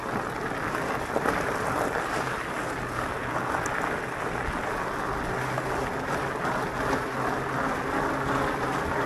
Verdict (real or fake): real